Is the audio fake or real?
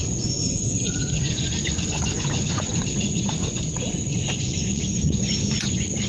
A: fake